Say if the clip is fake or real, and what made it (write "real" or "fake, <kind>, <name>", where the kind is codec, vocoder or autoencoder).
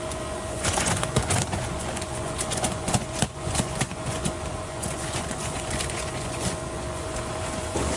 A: fake, vocoder, Vocos